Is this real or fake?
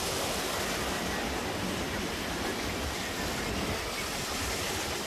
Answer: real